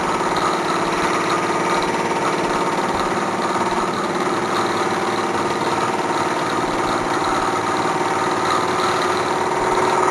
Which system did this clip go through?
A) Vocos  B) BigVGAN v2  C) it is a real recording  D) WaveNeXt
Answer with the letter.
C